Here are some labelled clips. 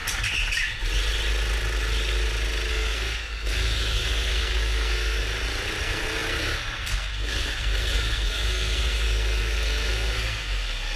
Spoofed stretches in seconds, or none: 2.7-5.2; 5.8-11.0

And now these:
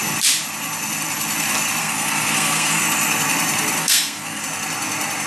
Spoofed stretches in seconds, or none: 1.8-2.8; 3.8-4.4